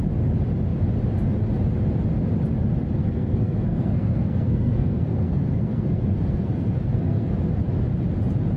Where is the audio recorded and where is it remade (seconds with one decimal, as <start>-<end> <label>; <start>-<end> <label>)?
0.0-3.0 recorded; 3.0-7.4 remade; 7.4-8.6 recorded